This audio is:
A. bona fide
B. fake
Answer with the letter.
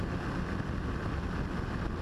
A